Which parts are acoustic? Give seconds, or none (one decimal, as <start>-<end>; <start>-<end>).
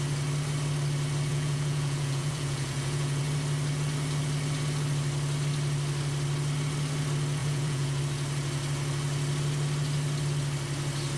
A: 0.0-1.3; 3.2-7.4; 8.0-11.2